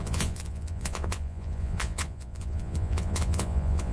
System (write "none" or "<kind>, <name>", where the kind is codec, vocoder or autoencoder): vocoder, Vocos